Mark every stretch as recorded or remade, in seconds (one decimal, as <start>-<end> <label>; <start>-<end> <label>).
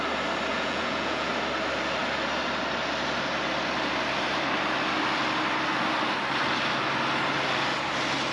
0.0-0.5 recorded; 0.5-1.3 remade; 1.3-8.3 recorded